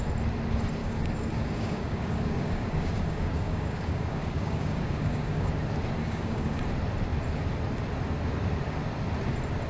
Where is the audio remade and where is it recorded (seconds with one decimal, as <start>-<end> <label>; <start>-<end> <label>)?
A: 0.0-0.8 recorded; 0.8-5.5 remade; 5.5-6.0 recorded; 6.0-6.6 remade; 6.6-9.7 recorded

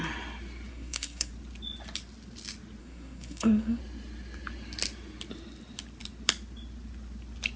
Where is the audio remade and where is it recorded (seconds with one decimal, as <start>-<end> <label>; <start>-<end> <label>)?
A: 0.0-0.7 recorded; 0.7-1.3 remade; 1.3-2.8 recorded; 2.8-3.8 remade; 3.8-7.6 recorded